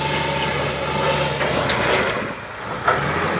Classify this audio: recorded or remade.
recorded